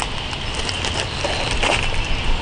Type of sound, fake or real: real